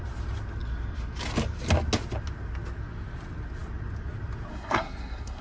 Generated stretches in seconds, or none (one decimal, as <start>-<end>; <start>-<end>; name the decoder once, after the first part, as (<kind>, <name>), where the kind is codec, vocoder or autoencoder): 4.5-5.4 (codec, SNAC)